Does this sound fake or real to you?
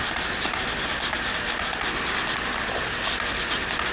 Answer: real